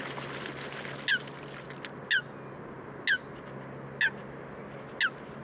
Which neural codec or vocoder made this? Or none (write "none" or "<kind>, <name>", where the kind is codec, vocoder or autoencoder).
none